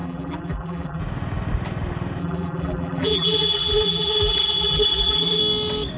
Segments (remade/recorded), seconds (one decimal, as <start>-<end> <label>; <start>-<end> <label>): 0.0-1.0 remade; 1.0-2.2 recorded; 2.2-5.4 remade; 5.4-6.0 recorded